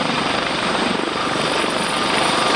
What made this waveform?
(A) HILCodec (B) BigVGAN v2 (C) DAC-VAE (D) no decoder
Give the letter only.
B